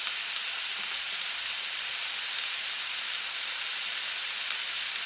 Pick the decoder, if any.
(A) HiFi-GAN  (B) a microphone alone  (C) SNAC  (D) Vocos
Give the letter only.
B